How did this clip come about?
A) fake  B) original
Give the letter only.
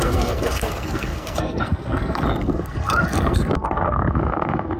A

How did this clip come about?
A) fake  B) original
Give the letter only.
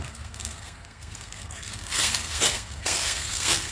A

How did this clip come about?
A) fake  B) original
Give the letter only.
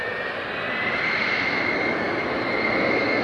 B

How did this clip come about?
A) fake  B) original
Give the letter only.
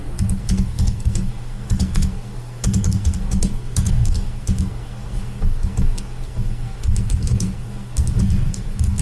A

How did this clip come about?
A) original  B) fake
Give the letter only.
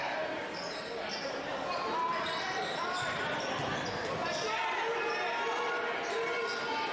A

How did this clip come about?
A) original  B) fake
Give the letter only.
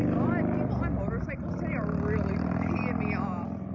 A